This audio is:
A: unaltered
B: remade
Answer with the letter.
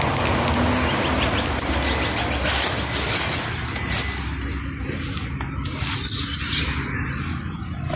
A